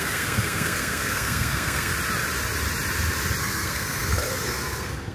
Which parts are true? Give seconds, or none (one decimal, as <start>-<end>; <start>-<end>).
1.9-3.4